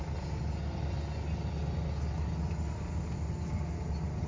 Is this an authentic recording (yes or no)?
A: yes